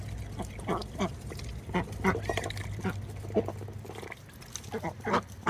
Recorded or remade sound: recorded